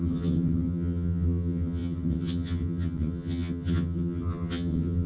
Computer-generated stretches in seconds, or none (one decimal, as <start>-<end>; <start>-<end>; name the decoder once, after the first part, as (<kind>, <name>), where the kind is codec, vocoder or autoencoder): 0.0-5.1 (vocoder, HiFi-GAN)